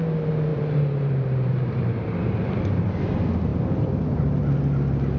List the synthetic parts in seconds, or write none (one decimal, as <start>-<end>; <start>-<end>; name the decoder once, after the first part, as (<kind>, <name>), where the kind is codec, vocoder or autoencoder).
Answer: 0.5-2.5 (vocoder, BigVGAN v2)